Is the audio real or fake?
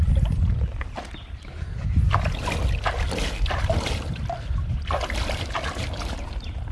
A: real